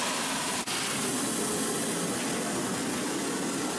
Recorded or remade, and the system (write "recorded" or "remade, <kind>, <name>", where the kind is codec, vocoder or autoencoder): recorded